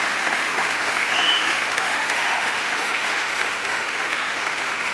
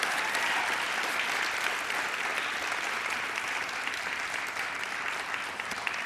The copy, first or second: first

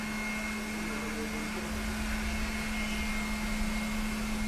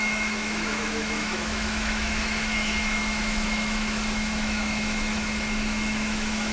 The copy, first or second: second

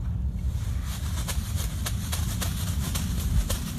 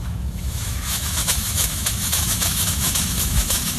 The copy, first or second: second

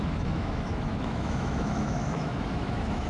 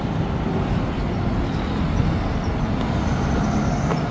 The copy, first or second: first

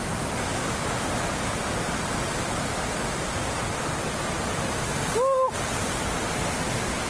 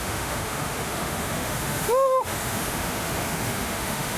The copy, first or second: second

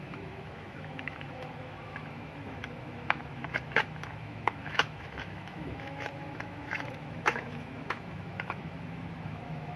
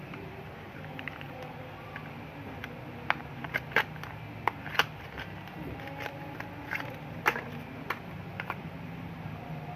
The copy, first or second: first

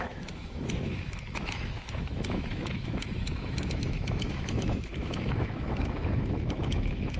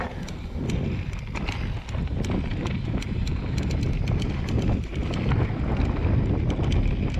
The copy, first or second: first